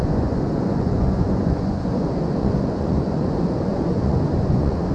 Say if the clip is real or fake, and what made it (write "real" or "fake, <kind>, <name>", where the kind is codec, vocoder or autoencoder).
fake, vocoder, Vocos